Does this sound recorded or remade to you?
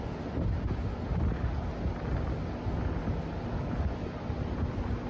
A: recorded